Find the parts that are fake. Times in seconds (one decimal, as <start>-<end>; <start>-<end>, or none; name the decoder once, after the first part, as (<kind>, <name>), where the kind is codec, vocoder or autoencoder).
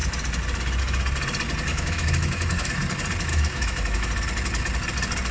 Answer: 1.7-2.7 (autoencoder, DAC-VAE); 3.3-4.1